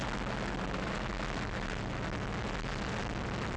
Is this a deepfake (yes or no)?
no